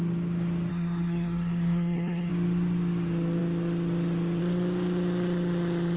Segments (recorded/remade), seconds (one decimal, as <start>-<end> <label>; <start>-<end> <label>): 0.0-0.7 recorded; 0.7-2.3 remade; 2.3-6.0 recorded